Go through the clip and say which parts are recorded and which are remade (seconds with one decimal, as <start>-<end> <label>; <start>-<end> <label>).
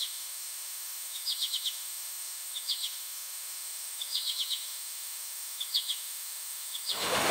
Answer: 0.0-7.3 remade